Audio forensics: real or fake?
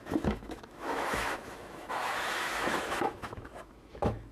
fake